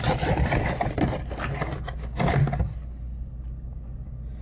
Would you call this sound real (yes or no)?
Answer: yes